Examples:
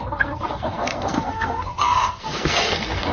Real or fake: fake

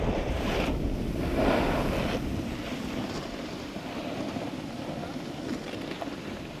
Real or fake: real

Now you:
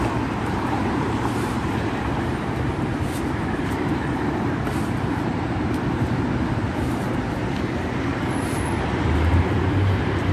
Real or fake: fake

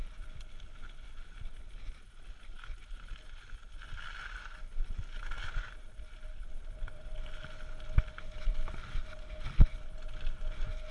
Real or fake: real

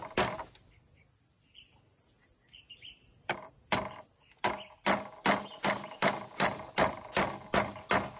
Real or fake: real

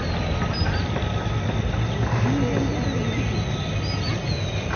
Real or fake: real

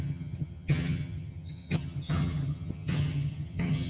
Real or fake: fake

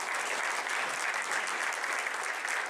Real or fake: real